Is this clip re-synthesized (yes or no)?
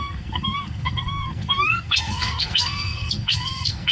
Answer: yes